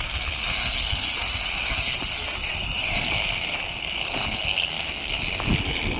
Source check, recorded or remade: recorded